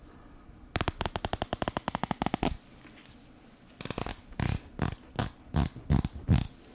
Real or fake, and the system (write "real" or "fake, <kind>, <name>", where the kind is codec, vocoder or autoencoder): real